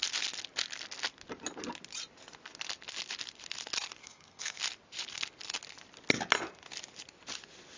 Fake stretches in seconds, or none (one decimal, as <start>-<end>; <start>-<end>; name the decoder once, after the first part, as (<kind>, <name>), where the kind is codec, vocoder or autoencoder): 4.0-4.6 (codec, SNAC)